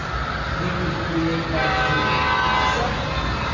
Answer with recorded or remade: recorded